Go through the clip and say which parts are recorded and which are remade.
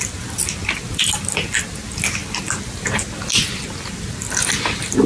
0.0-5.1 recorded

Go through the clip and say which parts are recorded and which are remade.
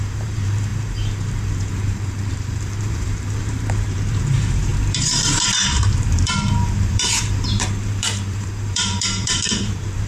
0.0-10.1 remade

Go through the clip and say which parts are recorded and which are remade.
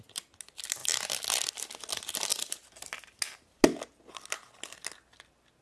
0.0-5.6 recorded